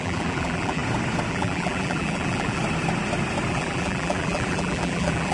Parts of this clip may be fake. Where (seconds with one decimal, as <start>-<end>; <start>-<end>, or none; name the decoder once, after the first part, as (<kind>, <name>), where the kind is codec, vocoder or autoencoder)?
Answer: 0.0-0.8 (vocoder, BigVGAN v2); 1.3-2.6; 3.5-5.3